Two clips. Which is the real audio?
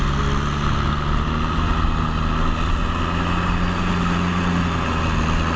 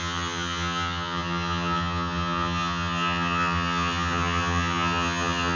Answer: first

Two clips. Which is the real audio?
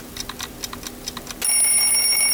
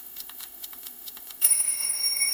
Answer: first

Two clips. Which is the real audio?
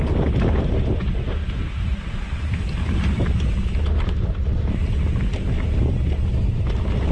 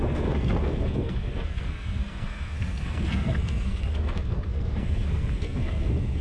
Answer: first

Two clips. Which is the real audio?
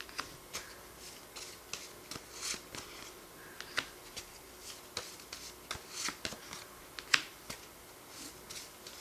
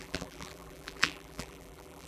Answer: first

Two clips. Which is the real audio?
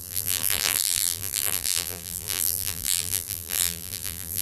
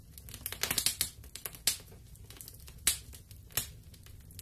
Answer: second